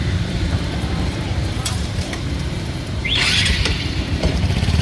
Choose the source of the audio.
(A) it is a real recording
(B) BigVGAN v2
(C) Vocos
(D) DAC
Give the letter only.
B